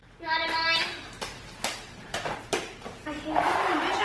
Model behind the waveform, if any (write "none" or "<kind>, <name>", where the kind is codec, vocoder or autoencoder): vocoder, BigVGAN v2